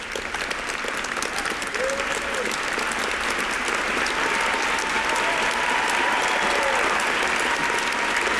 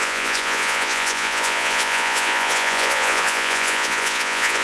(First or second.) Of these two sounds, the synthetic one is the second